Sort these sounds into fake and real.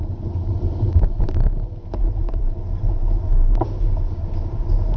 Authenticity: fake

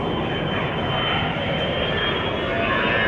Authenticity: real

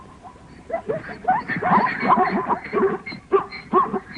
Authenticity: real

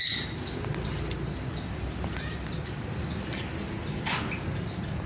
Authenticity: real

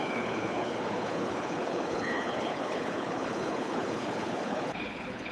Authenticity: fake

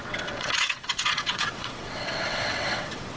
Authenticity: fake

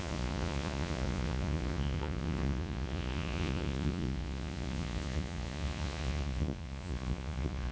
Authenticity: fake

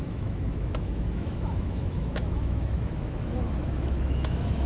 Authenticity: fake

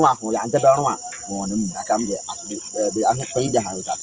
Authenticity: fake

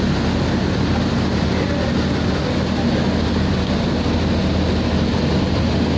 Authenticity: real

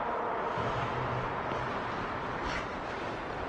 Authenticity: real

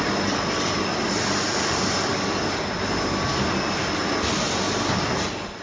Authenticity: real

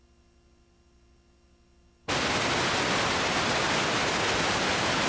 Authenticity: real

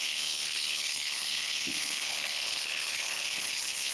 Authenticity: fake